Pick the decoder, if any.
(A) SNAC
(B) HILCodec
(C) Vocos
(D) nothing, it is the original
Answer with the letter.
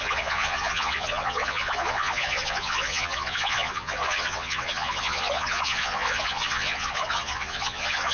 C